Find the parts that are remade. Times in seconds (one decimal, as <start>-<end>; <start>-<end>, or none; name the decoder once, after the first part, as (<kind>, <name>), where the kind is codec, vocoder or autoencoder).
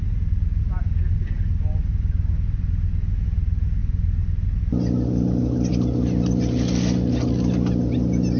none